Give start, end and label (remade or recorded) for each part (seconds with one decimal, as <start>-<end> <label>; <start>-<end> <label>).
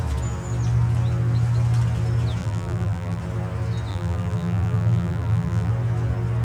0.0-2.4 recorded; 2.4-3.2 remade; 3.2-3.9 recorded; 3.9-5.7 remade; 5.7-6.4 recorded